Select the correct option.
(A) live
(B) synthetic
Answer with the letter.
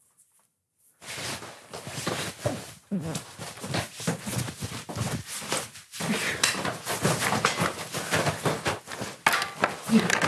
A